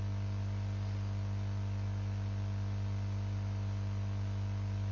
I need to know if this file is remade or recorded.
recorded